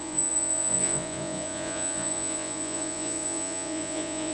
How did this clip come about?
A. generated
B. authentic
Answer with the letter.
A